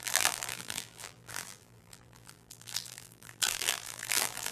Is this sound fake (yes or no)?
yes